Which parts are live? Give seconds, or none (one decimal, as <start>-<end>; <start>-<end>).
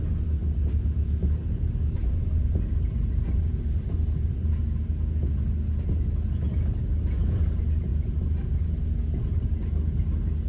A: 0.0-2.0; 4.6-7.9; 8.8-10.5